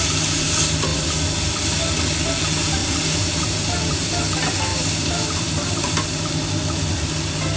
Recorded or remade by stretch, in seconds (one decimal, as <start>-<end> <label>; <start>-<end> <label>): 0.0-2.8 recorded; 2.8-4.1 remade; 4.1-4.7 recorded; 4.7-6.3 remade; 6.3-7.6 recorded